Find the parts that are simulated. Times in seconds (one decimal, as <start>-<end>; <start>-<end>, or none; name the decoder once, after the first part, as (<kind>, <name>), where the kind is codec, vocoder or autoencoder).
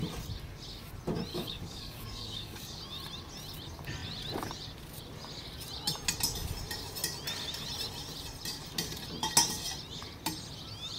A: 1.3-2.8 (codec, DAC)